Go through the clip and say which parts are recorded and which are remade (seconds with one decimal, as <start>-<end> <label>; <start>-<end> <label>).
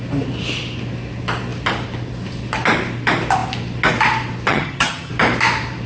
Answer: 0.0-4.5 recorded; 4.5-5.1 remade; 5.1-5.9 recorded